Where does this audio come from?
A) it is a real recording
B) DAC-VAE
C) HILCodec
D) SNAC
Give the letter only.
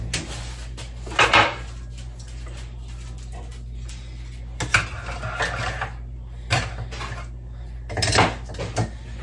A